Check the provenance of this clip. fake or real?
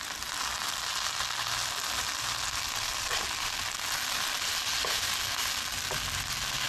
real